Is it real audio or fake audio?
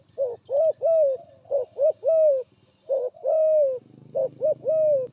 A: real